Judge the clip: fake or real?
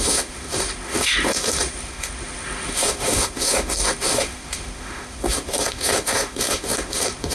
fake